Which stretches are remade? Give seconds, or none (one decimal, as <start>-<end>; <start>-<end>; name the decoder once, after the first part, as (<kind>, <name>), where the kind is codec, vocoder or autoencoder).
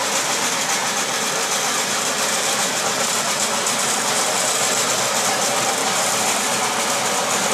0.8-4.9 (vocoder, BigVGAN v2); 5.8-6.4